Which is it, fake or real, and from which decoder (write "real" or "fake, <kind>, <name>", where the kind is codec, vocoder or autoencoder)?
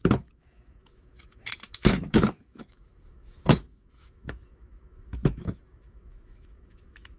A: fake, autoencoder, DAC-VAE